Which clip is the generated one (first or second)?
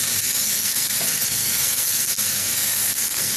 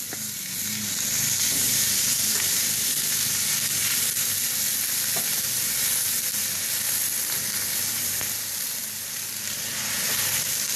first